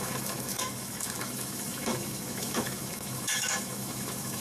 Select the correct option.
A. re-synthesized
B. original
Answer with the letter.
A